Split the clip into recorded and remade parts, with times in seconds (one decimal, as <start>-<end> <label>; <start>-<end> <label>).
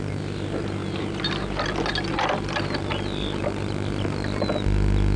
0.0-5.2 recorded